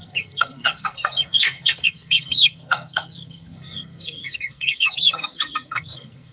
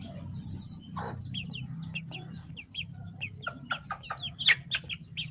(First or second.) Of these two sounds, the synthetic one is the first